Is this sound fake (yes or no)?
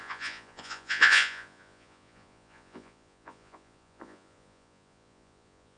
yes